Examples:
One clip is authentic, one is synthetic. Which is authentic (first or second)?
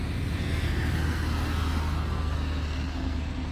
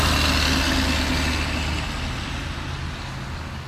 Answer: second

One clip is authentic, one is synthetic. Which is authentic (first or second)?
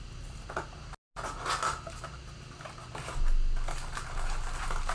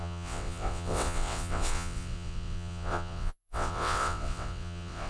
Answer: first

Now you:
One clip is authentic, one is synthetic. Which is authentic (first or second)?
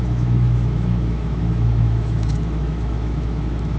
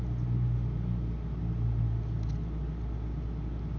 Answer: second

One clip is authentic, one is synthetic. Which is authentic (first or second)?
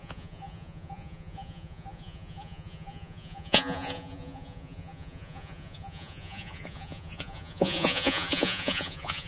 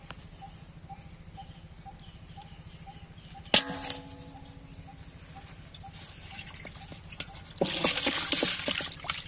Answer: second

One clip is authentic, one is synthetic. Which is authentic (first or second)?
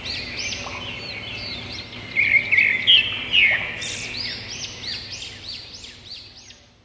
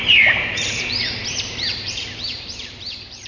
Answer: first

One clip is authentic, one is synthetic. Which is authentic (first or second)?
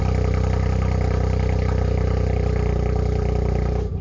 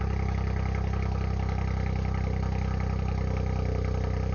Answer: second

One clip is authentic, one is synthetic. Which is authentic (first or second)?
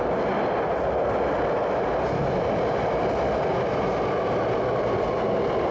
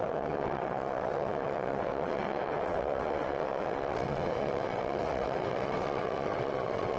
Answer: first